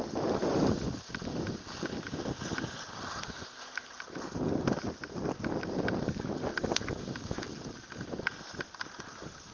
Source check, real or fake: real